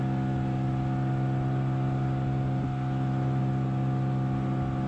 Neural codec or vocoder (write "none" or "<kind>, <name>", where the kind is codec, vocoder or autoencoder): none